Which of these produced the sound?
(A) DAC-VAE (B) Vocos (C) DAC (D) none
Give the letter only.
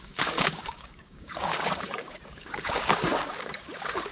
C